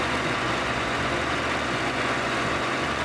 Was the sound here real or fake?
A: fake